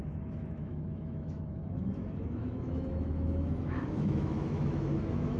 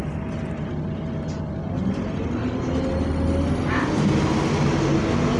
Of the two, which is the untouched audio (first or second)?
second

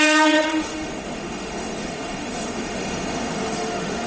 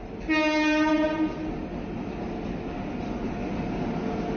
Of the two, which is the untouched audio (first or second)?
second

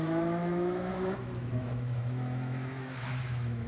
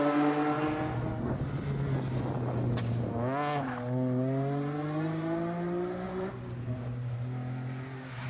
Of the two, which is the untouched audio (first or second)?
second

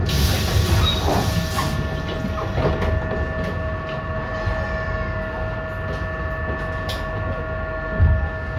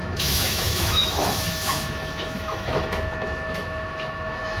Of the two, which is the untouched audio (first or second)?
first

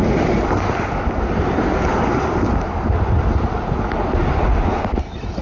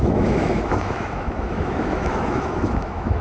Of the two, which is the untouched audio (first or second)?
first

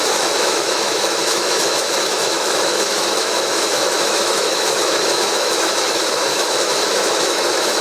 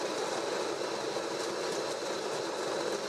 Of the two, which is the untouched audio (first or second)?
second